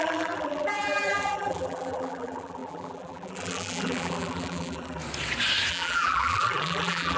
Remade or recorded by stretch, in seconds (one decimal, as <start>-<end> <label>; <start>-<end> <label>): 0.0-5.0 remade; 5.0-5.7 recorded; 5.7-7.2 remade